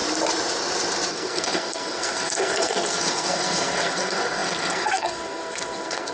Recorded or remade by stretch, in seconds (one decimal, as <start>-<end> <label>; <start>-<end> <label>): 0.0-1.1 recorded; 1.1-6.1 remade